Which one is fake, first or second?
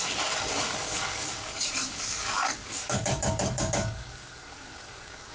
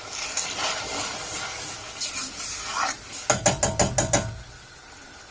first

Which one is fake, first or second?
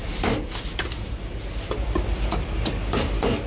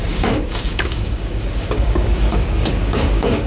second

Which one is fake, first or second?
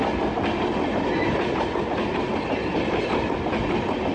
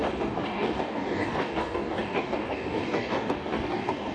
second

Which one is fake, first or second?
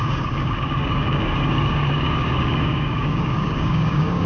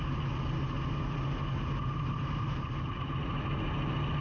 first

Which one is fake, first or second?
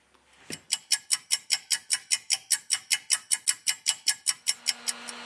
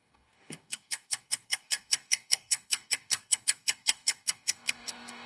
second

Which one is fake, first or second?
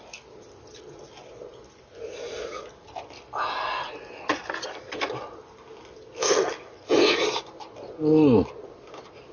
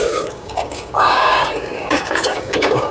second